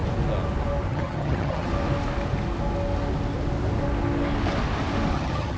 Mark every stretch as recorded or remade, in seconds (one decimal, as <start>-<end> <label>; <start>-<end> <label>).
0.0-0.9 recorded; 0.9-1.7 remade; 1.7-5.1 recorded; 5.1-5.6 remade